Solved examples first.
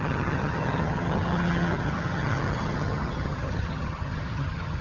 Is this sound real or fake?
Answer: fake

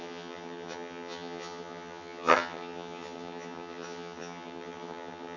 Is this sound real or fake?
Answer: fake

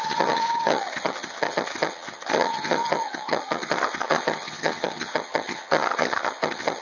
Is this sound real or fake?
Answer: fake